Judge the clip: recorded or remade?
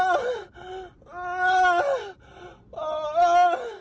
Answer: recorded